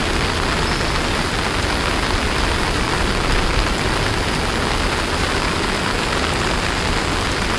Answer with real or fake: real